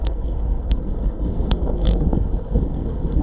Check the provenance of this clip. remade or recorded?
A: remade